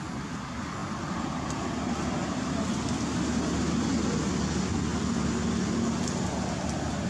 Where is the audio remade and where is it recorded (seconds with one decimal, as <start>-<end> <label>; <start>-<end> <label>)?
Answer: 0.0-7.1 recorded